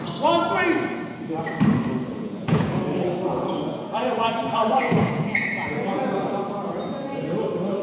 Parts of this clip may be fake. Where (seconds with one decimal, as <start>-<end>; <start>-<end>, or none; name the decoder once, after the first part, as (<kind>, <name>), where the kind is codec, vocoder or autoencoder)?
2.1-2.8 (vocoder, Vocos); 3.3-6.4